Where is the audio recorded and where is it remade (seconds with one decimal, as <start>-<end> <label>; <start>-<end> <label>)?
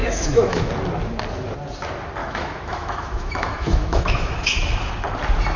0.0-0.7 remade; 0.7-2.2 recorded; 2.2-4.9 remade; 4.9-5.6 recorded